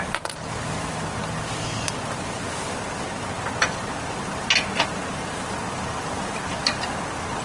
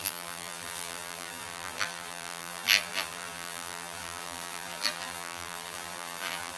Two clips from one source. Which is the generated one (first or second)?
second